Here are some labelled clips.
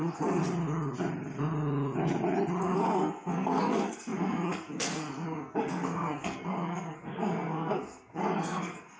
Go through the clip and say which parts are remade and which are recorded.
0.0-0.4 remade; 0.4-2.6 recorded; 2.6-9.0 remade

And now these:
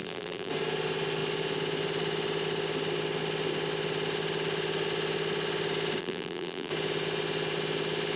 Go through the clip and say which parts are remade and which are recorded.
0.0-0.5 remade; 0.5-6.0 recorded; 6.0-6.7 remade; 6.7-8.2 recorded

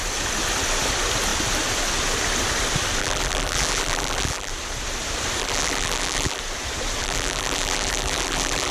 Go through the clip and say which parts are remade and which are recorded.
0.0-3.0 recorded; 3.0-4.5 remade; 4.5-5.4 recorded; 5.4-6.4 remade; 6.4-7.0 recorded; 7.0-8.7 remade